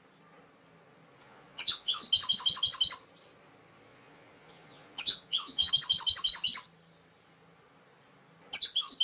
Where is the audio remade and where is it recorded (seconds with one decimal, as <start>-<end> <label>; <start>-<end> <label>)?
0.0-1.2 recorded; 1.2-2.0 remade; 2.0-3.9 recorded; 3.9-5.7 remade; 5.7-9.0 recorded